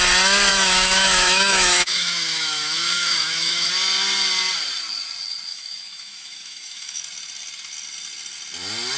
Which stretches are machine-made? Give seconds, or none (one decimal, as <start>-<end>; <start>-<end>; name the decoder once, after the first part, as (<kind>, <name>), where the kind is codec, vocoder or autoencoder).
0.5-3.7 (autoencoder, DAC-VAE); 5.5-7.0